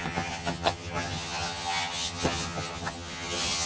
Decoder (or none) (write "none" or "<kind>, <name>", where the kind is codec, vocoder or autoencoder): vocoder, HiFi-GAN